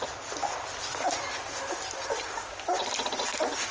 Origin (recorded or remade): recorded